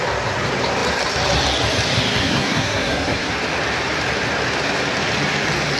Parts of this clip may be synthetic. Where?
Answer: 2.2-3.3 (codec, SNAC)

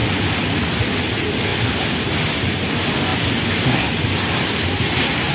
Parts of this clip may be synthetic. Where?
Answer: none

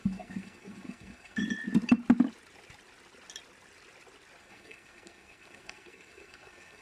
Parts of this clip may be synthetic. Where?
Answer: 0.0-1.4 (codec, SNAC); 4.4-6.8